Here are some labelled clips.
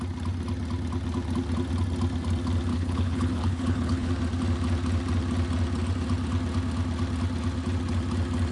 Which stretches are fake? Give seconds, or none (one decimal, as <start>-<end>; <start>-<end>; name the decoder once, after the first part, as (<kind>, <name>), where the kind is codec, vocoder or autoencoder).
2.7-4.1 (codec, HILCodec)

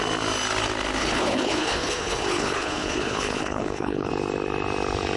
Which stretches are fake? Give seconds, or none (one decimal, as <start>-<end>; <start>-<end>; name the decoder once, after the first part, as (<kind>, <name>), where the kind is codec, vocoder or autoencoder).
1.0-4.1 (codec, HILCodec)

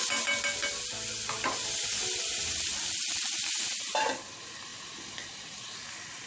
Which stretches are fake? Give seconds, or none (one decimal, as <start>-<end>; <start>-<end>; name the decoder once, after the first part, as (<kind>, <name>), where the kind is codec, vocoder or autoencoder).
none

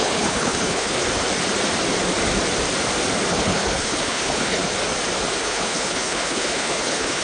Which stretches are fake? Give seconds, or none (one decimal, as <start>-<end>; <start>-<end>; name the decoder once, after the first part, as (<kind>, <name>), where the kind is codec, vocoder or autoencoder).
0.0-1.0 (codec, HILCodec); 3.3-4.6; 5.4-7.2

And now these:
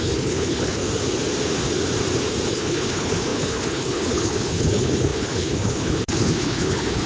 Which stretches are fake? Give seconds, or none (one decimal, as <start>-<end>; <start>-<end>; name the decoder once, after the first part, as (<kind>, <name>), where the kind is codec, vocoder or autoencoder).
0.0-0.8 (codec, HILCodec); 2.5-7.1

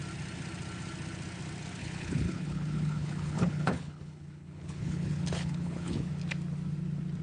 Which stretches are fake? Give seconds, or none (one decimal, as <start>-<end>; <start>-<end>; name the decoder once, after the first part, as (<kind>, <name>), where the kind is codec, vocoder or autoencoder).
1.8-6.1 (codec, HILCodec)